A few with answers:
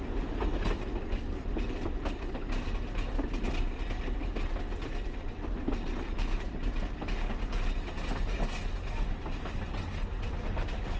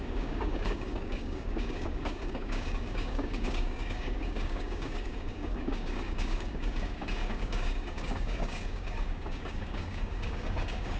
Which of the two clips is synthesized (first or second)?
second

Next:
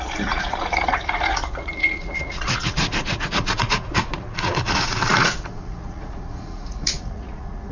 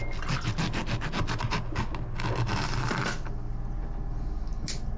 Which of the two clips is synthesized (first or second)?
first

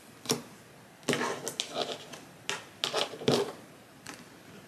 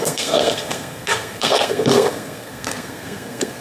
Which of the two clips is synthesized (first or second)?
second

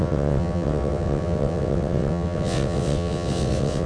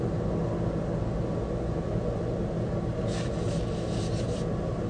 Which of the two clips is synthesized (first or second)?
first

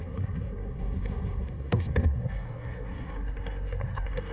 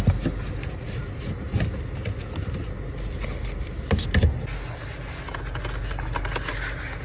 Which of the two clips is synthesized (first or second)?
first